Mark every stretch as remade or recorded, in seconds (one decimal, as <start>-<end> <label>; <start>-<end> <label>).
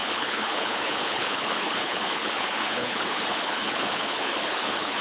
0.0-5.0 remade